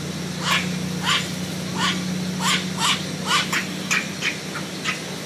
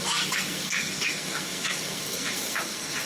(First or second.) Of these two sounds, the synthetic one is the second